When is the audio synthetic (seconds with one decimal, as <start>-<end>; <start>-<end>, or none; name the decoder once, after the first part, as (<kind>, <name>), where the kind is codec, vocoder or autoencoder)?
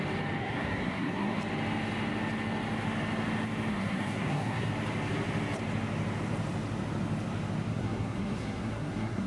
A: 0.4-1.4 (codec, SNAC); 3.7-4.7; 7.7-9.3